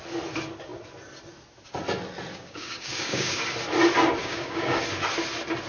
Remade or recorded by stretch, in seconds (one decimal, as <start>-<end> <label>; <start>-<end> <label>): 0.0-2.3 recorded; 2.3-3.4 remade; 3.4-4.2 recorded; 4.2-4.8 remade; 4.8-5.7 recorded